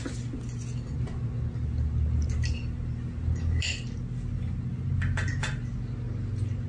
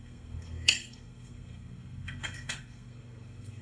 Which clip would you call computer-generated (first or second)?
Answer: second